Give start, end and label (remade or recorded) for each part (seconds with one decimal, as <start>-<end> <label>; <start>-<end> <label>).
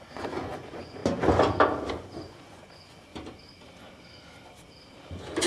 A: 0.0-1.0 remade; 1.0-1.9 recorded; 1.9-3.1 remade; 3.1-5.5 recorded